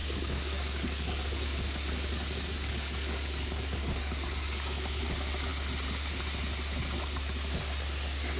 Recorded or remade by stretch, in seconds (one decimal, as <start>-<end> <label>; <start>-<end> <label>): 0.0-5.0 remade; 5.0-8.4 recorded